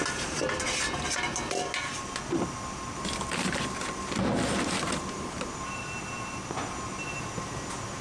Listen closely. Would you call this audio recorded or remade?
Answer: recorded